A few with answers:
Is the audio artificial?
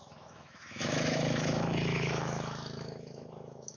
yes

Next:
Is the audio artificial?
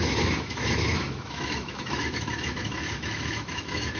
yes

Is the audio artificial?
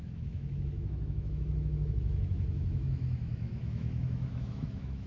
yes